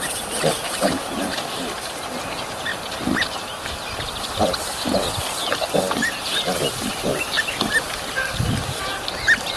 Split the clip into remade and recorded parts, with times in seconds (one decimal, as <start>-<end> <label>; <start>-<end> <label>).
0.0-5.4 remade; 5.4-8.0 recorded; 8.0-9.6 remade